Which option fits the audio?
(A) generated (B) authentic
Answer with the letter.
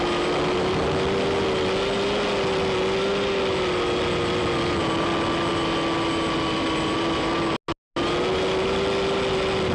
B